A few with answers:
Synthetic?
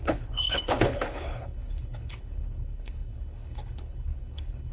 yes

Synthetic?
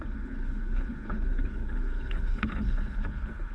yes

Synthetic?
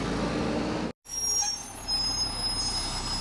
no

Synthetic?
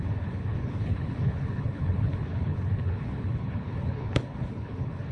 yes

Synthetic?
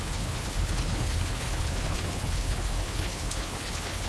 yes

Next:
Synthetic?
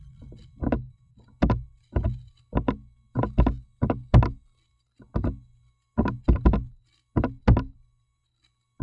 no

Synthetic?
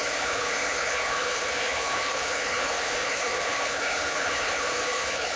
yes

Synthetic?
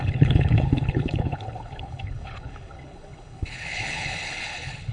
yes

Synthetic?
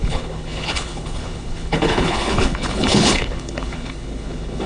yes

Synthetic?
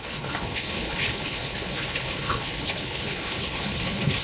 yes